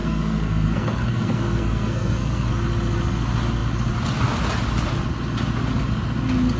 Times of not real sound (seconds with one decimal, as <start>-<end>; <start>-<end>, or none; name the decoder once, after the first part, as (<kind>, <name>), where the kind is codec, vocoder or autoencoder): 0.0-2.5 (codec, SNAC)